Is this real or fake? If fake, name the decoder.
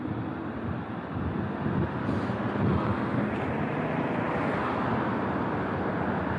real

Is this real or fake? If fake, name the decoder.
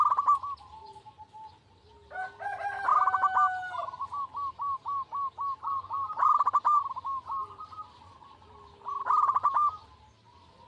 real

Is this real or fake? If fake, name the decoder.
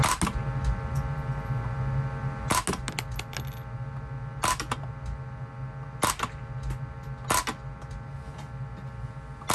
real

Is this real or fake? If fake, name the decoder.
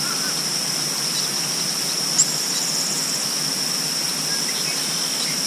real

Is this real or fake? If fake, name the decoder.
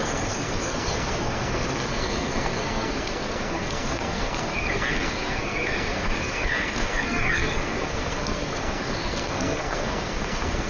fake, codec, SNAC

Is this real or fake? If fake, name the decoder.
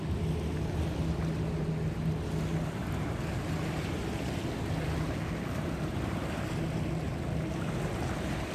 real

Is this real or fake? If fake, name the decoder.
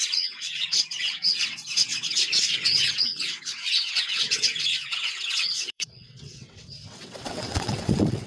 fake, vocoder, WaveNeXt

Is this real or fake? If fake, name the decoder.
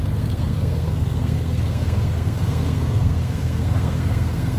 fake, codec, SNAC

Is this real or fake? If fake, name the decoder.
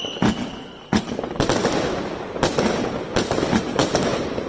real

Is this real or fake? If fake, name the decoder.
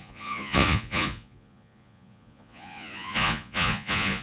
fake, vocoder, Vocos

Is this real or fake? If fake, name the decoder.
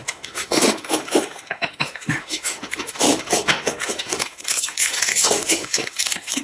fake, autoencoder, DAC-VAE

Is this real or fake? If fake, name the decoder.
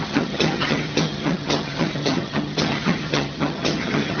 fake, vocoder, HiFi-GAN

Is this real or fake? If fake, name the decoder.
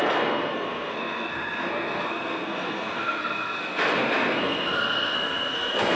fake, codec, SNAC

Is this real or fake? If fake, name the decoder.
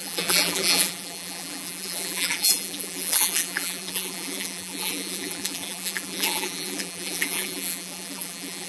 fake, vocoder, BigVGAN v2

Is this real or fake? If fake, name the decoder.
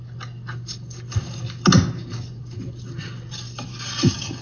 real